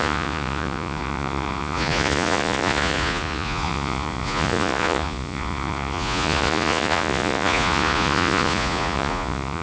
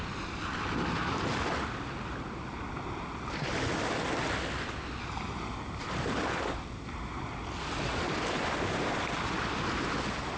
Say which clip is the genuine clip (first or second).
second